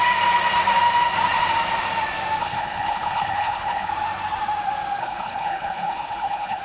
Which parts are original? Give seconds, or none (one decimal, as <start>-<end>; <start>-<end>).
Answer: 0.0-2.4; 3.9-5.0